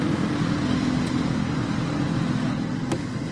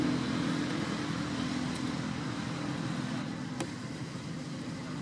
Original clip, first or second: first